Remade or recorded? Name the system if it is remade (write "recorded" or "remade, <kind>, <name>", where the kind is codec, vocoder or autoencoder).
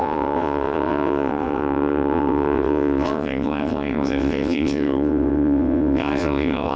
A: remade, vocoder, WaveNeXt